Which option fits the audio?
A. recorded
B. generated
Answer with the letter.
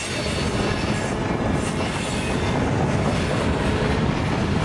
A